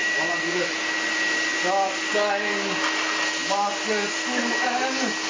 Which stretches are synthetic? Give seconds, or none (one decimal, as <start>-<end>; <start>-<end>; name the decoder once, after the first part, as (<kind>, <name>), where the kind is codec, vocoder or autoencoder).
0.0-0.7 (vocoder, BigVGAN v2); 1.5-2.1; 3.4-4.5